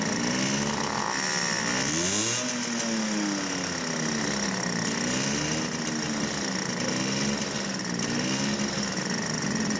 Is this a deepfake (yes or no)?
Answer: no